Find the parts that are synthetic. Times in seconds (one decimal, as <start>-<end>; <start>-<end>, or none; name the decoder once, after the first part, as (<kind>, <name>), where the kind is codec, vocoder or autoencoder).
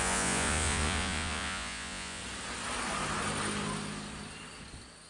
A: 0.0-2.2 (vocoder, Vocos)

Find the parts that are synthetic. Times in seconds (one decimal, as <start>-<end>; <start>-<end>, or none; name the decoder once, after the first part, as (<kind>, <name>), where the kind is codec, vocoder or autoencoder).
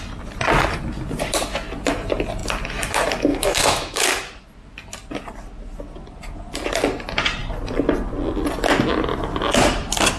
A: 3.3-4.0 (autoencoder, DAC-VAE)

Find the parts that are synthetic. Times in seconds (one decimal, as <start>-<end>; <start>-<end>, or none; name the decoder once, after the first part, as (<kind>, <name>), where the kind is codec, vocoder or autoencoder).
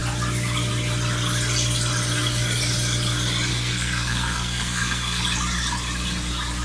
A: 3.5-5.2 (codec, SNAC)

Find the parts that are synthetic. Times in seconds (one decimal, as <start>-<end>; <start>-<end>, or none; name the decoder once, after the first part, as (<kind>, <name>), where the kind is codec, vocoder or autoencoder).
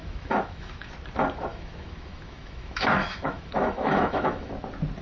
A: 0.0-0.9 (autoencoder, DAC-VAE); 1.5-4.5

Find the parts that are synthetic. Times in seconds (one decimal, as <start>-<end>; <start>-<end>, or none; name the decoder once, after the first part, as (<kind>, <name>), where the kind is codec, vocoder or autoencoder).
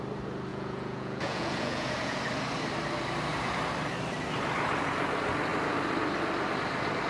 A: 0.5-2.2 (vocoder, Vocos)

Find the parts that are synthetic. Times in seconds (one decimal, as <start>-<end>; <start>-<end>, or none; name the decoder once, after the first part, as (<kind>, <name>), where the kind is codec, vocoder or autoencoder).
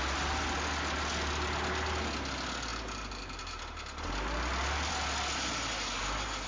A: none